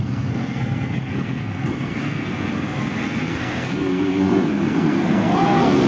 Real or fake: fake